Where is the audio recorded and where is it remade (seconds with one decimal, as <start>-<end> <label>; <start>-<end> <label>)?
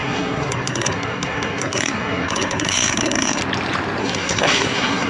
0.0-3.4 remade; 3.4-4.0 recorded; 4.0-5.1 remade